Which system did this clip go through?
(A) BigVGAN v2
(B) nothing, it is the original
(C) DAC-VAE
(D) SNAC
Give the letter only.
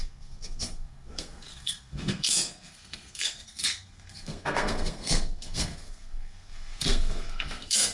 D